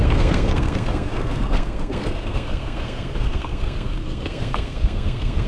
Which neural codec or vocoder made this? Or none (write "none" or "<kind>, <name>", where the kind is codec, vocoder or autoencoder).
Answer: codec, SNAC